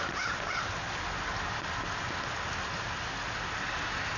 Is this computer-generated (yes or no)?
no